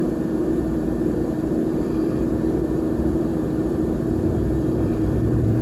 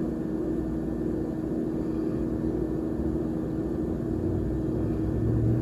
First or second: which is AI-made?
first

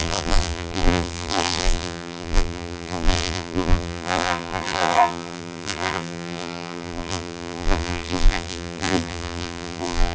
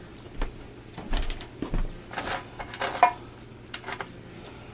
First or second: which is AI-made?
first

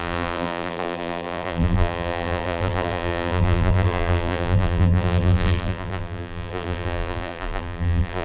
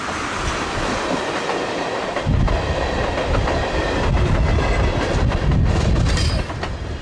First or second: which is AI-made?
first